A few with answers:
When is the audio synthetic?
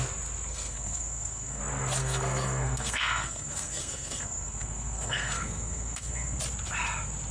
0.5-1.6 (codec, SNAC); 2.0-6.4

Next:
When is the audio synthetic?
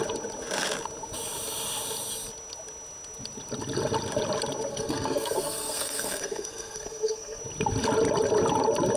4.7-7.4 (codec, SNAC)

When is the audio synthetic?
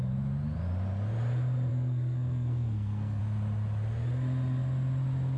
1.7-3.2 (codec, SNAC)